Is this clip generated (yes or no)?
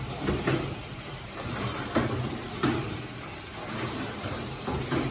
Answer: yes